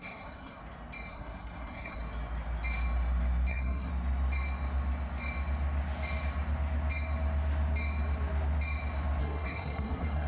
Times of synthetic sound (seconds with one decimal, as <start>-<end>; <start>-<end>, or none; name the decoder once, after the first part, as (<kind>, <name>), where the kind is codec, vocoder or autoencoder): 0.0-0.6 (codec, SNAC); 1.1-2.0; 3.5-3.9; 9.2-10.3